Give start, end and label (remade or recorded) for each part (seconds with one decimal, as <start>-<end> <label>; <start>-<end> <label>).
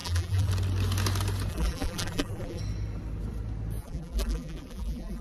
0.0-0.5 remade; 0.5-1.5 recorded; 1.5-2.6 remade; 2.6-3.8 recorded; 3.8-5.2 remade